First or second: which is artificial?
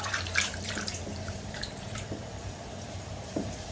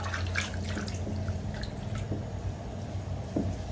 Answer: first